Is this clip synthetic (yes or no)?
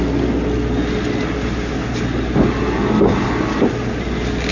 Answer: no